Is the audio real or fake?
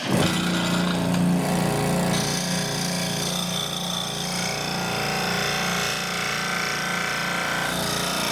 real